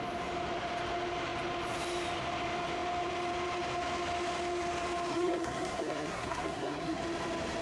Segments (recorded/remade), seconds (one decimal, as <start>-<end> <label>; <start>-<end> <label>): 0.0-5.1 recorded; 5.1-7.0 remade; 7.0-7.6 recorded